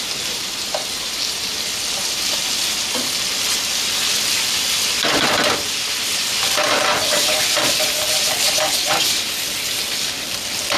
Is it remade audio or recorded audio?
recorded